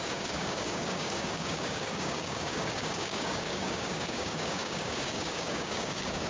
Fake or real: fake